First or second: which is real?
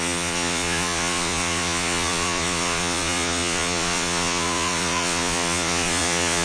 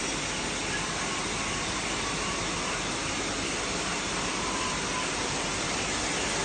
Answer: second